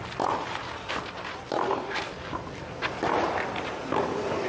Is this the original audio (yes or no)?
yes